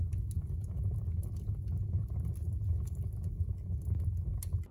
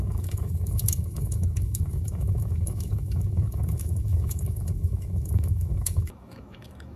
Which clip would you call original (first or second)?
first